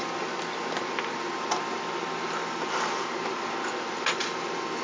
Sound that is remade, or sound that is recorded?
recorded